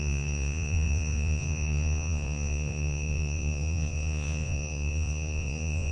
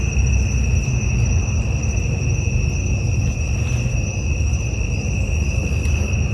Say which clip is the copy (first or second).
first